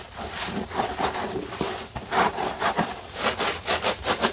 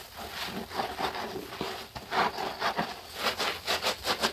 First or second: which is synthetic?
first